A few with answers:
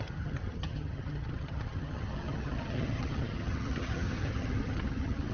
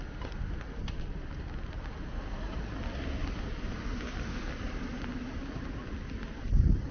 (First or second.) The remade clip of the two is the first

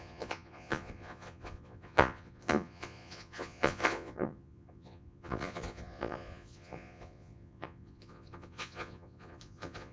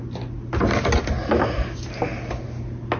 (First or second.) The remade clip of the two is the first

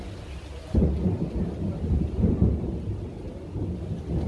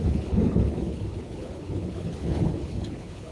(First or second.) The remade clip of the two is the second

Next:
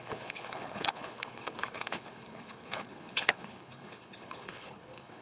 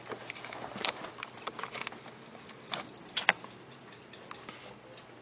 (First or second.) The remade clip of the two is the first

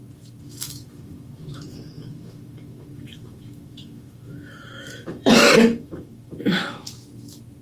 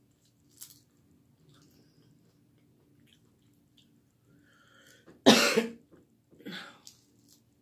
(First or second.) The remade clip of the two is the first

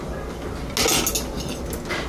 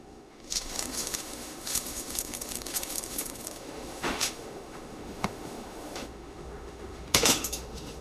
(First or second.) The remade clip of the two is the second